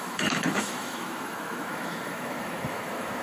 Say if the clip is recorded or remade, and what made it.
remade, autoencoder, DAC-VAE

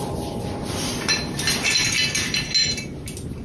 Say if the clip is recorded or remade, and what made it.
recorded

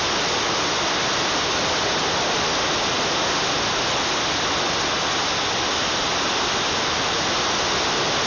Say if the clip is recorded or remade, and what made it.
recorded